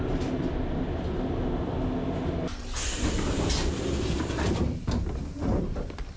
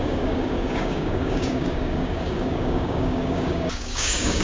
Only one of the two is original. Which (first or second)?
first